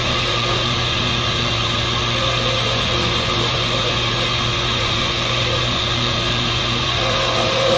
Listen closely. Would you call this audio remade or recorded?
remade